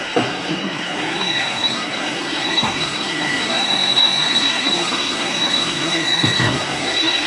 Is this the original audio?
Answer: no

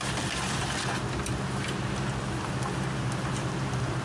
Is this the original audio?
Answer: yes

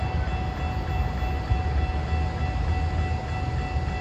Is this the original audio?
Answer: yes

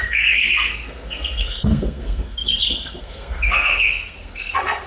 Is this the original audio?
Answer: no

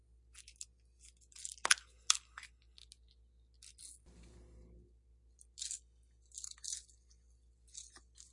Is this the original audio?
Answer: yes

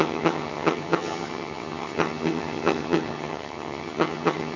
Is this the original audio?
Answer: no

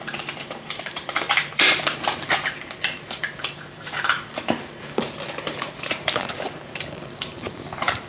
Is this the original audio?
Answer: no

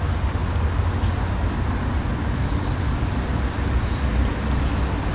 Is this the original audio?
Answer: yes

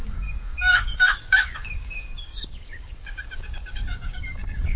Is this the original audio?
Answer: no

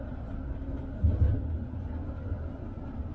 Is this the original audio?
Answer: yes